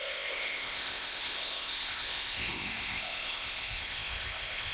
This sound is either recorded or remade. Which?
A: remade